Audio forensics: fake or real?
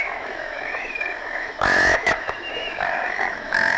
fake